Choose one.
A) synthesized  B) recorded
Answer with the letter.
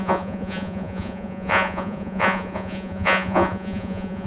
A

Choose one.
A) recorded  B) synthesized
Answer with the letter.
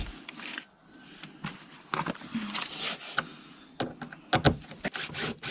A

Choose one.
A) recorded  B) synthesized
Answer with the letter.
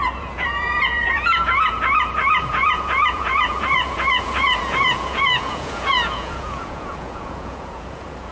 B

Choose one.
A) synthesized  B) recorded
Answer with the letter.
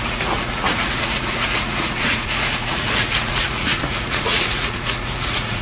A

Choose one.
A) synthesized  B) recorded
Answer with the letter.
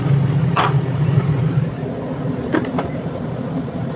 B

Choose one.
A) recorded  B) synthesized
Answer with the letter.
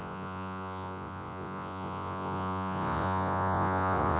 B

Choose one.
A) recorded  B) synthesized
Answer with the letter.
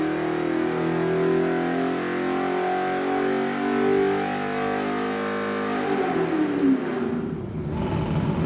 A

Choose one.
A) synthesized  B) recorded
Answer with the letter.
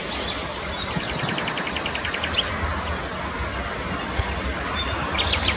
B